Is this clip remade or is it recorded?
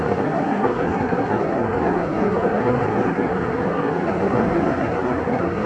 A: remade